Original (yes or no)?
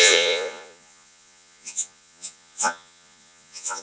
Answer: no